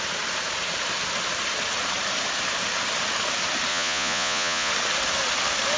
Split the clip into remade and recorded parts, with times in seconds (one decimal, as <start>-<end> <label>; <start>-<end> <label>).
0.0-3.7 recorded; 3.7-4.7 remade; 4.7-5.8 recorded